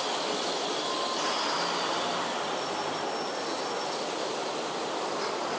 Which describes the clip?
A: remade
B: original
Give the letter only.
B